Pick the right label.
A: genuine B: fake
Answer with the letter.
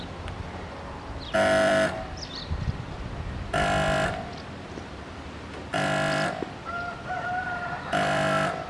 B